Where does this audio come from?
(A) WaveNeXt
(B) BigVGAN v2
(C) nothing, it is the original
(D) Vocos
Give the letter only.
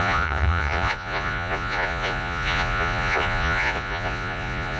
D